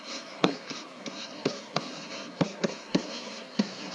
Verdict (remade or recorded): remade